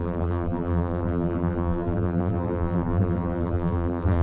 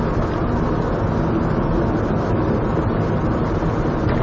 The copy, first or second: first